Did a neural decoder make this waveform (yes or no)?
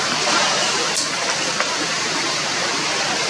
no